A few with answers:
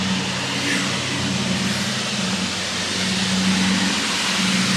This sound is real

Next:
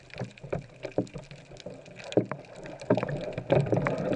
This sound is real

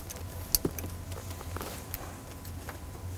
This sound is real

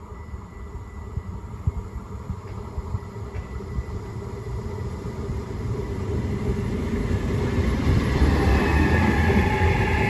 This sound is fake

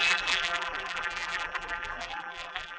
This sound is fake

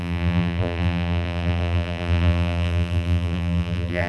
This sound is fake